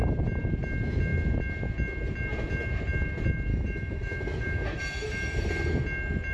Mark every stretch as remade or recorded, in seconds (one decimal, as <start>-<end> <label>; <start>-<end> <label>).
0.0-3.5 recorded; 3.5-4.8 remade; 4.8-6.3 recorded